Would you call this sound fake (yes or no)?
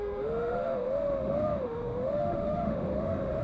yes